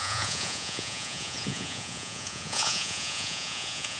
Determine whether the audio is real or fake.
fake